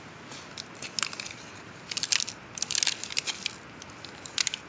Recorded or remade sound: recorded